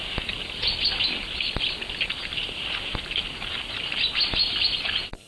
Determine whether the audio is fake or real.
real